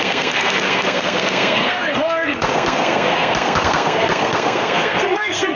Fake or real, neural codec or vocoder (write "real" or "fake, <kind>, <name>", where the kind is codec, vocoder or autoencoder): fake, codec, SNAC